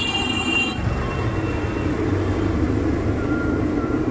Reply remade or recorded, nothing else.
recorded